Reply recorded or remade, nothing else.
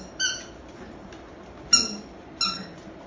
recorded